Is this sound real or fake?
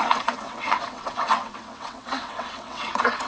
fake